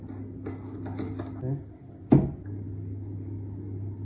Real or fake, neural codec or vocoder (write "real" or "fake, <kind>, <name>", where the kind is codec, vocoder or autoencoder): real